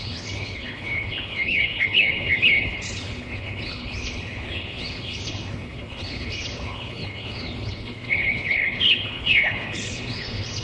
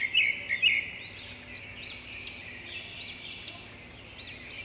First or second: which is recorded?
second